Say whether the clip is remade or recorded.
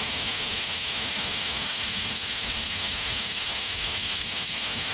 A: remade